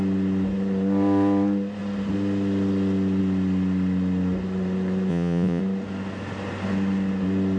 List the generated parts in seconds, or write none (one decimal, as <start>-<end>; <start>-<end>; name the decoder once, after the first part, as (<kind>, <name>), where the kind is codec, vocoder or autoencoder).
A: 5.1-5.6 (vocoder, Vocos)